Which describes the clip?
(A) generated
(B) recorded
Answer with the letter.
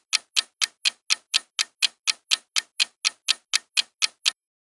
B